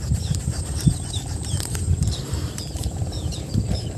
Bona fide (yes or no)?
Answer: no